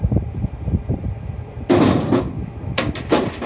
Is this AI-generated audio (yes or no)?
yes